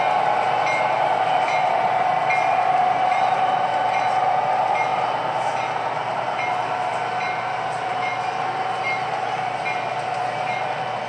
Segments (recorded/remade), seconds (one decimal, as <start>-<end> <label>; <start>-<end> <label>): 0.0-11.1 recorded